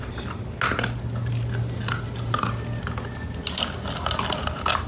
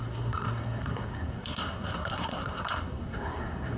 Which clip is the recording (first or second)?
first